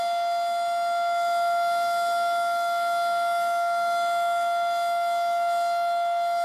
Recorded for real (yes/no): yes